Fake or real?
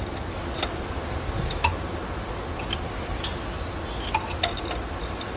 real